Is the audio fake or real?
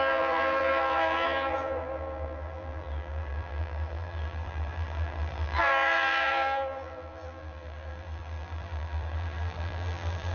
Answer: fake